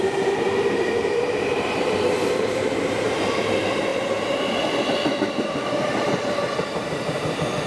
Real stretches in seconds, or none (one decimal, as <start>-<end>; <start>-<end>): 3.9-6.3

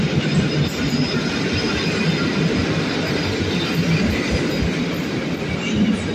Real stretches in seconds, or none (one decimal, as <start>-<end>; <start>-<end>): 0.0-2.6; 3.4-6.1

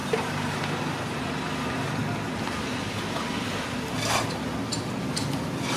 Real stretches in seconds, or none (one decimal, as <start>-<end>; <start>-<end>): 2.0-5.8

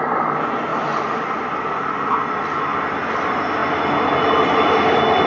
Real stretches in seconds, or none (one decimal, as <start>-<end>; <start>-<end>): 0.0-5.3

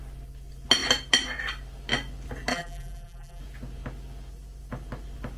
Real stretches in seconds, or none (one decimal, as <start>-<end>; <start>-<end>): 0.0-2.5; 3.4-5.4